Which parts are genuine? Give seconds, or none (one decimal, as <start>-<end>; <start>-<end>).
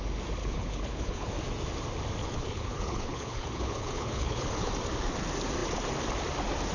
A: 0.0-0.4; 1.3-2.2; 4.7-6.7